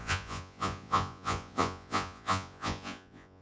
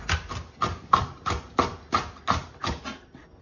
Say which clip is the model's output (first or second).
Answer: first